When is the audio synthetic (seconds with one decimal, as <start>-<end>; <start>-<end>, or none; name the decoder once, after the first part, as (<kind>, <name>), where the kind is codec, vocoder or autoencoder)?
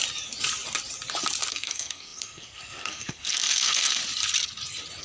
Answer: 1.5-4.0 (codec, SNAC)